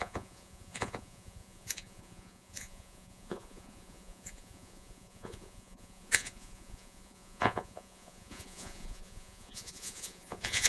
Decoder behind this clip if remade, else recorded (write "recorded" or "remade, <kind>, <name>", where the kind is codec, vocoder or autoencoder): remade, vocoder, Vocos